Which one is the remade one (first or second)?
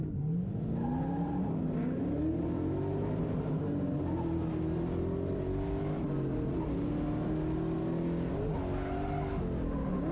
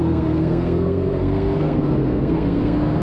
second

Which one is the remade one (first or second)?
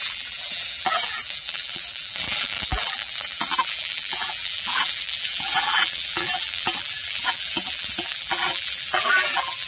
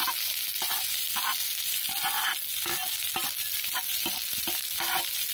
first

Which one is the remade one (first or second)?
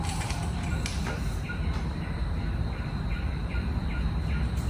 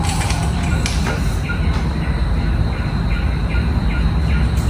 first